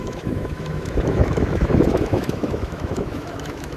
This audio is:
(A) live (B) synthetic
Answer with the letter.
B